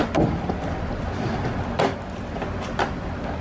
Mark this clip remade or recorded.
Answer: recorded